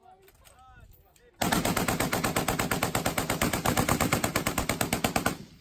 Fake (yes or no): no